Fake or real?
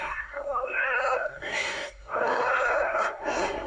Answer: fake